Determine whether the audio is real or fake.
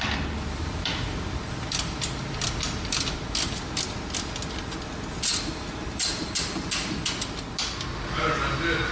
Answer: real